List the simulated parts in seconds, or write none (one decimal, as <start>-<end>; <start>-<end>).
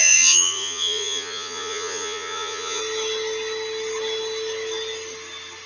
0.0-2.8